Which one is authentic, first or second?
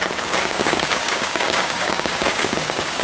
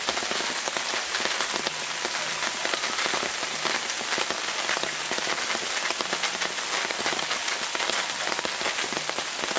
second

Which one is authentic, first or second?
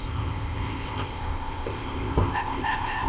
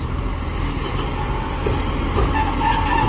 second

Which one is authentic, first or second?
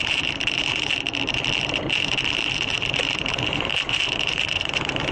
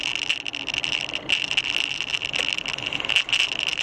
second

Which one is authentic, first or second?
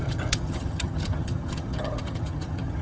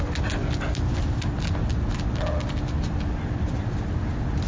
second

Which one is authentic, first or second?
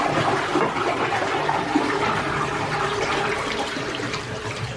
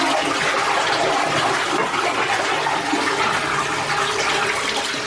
second